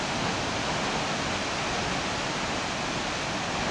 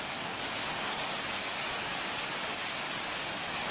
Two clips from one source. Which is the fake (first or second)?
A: second